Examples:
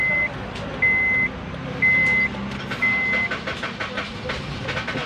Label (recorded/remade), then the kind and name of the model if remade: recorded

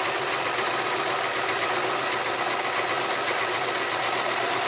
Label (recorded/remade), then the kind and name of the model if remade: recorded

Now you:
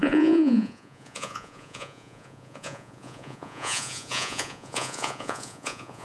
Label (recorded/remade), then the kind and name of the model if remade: remade, vocoder, Vocos